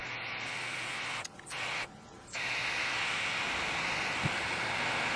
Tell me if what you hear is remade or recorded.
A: recorded